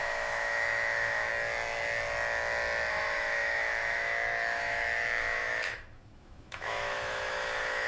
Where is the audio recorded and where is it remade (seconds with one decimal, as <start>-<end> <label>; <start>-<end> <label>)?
0.0-1.3 remade; 1.3-2.9 recorded; 2.9-7.9 remade